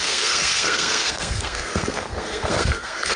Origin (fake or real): fake